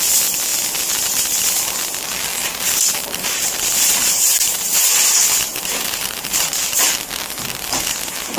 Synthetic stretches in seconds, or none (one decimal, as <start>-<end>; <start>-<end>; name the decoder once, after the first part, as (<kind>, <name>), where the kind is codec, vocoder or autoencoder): 2.4-4.9 (vocoder, BigVGAN v2); 5.5-6.5